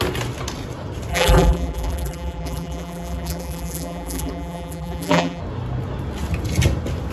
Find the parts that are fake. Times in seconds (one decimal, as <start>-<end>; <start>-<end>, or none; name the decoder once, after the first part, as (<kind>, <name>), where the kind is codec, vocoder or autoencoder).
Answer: 1.1-5.4 (vocoder, BigVGAN v2)